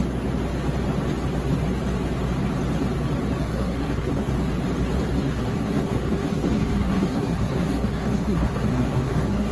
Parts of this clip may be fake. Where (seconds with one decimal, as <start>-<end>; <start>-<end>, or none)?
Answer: 3.4-4.3; 5.2-9.5

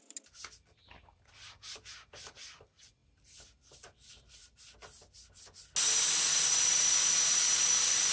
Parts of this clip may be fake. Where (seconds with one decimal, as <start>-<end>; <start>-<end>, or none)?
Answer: none

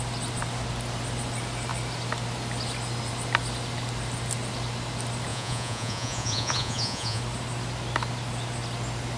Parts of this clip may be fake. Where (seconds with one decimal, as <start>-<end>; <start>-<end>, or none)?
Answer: 5.3-7.2

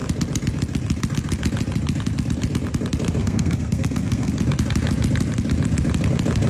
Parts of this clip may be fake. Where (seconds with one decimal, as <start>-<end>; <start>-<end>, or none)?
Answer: 3.2-4.3

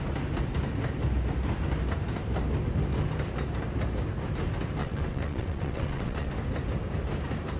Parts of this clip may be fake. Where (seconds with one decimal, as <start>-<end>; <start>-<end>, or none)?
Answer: 4.8-6.3

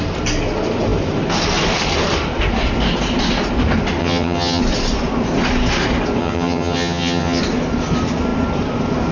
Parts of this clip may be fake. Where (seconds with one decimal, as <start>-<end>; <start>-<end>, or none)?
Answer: 4.0-4.6; 6.2-7.4